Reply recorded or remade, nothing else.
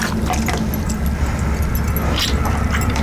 recorded